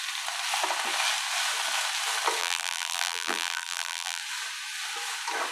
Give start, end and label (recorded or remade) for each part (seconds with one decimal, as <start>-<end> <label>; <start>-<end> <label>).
0.0-2.4 recorded; 2.4-4.2 remade; 4.2-5.5 recorded